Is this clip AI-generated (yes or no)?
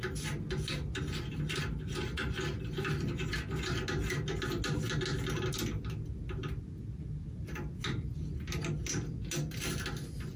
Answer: no